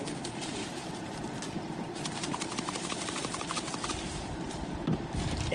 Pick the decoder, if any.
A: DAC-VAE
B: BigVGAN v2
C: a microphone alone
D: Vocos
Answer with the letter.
B